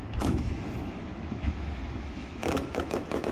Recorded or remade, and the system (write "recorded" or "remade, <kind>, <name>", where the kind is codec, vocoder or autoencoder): remade, autoencoder, DAC-VAE